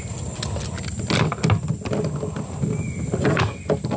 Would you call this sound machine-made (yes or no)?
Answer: no